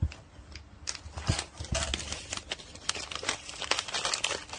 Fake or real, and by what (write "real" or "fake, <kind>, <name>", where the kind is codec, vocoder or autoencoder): real